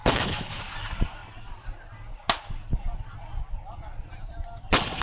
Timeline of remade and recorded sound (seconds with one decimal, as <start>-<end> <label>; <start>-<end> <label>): 0.0-0.6 remade; 0.6-5.0 recorded